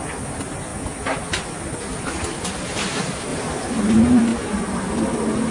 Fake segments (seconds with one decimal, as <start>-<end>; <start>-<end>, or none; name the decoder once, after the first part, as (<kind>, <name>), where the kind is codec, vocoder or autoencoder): 0.0-0.7 (vocoder, BigVGAN v2); 2.6-4.3